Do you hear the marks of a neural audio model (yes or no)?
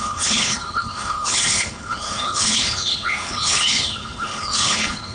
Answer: yes